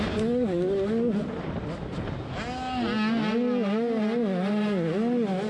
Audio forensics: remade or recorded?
recorded